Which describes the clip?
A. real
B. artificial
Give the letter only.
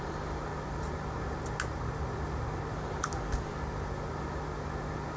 A